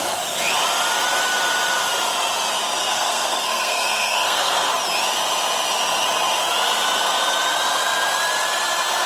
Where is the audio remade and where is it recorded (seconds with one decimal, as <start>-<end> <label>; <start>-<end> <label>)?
0.0-2.8 recorded; 2.8-4.7 remade; 4.7-9.1 recorded